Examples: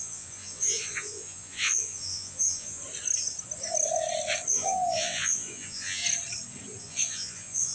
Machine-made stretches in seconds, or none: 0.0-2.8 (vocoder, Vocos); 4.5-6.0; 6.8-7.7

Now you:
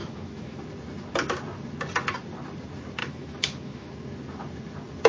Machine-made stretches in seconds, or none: 0.0-0.6 (autoencoder, DAC-VAE); 3.0-3.9

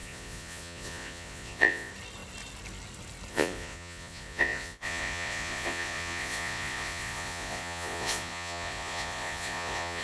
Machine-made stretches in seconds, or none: 0.0-1.9 (vocoder, Vocos); 3.3-10.0

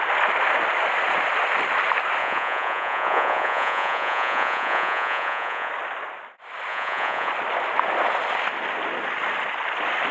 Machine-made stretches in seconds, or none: 2.2-5.7 (vocoder, Vocos); 6.7-7.3